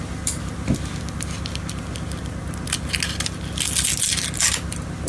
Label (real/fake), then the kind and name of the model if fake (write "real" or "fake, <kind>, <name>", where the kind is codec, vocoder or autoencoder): real